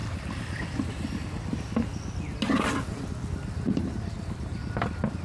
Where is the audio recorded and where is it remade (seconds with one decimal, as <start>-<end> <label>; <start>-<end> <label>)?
0.0-5.2 recorded